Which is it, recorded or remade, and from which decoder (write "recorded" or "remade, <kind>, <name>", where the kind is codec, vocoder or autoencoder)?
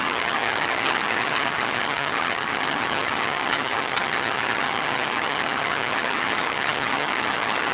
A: remade, vocoder, HiFi-GAN